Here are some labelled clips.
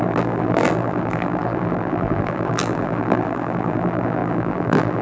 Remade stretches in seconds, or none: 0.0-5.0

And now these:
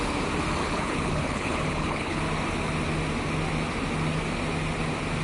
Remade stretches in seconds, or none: 0.6-2.2